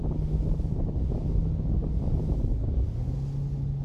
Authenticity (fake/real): real